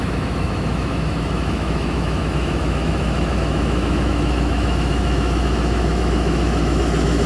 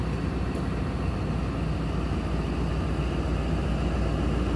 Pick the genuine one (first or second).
second